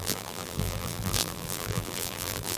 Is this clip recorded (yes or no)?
no